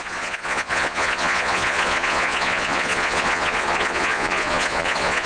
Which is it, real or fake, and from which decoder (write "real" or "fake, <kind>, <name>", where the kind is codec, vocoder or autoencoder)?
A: fake, vocoder, Vocos